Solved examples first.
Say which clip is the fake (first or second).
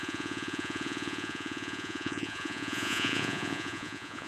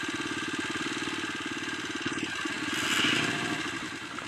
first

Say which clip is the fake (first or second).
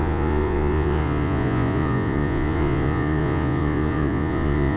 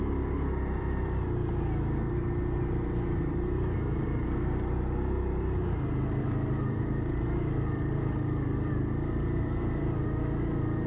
first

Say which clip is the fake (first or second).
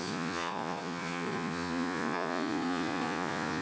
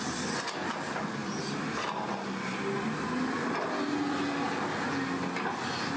first